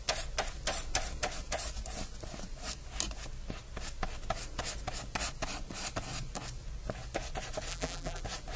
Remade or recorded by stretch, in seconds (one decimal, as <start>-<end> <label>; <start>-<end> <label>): 0.0-7.7 recorded; 7.7-8.2 remade; 8.2-8.6 recorded